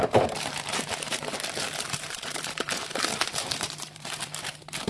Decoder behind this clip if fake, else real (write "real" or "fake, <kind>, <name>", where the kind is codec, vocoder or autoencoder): fake, vocoder, BigVGAN v2